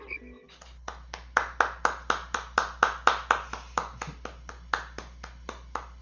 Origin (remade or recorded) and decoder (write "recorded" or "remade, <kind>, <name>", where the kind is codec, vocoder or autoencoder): recorded